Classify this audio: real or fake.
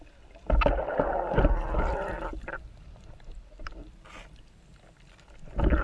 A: real